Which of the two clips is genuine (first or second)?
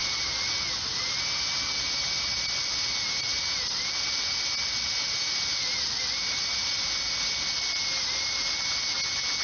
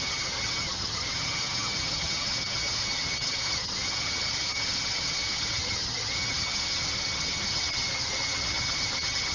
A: first